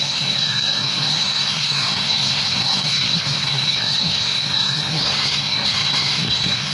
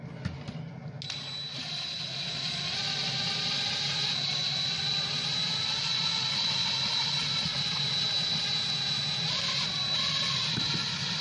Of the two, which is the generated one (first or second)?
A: first